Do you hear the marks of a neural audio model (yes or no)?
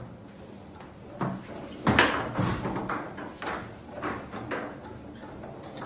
no